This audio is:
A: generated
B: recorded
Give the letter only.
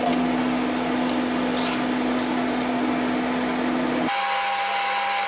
B